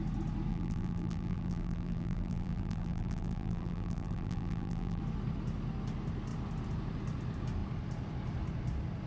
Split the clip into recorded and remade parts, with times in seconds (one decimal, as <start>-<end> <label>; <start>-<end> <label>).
0.0-0.5 recorded; 0.5-5.0 remade; 5.0-9.1 recorded